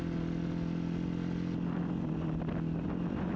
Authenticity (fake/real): real